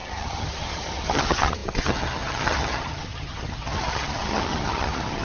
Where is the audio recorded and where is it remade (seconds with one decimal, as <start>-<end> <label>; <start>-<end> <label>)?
0.0-5.2 remade